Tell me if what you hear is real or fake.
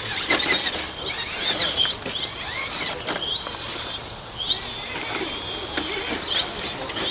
real